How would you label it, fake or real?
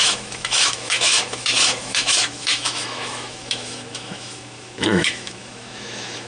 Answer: fake